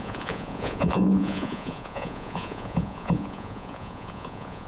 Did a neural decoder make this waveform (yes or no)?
yes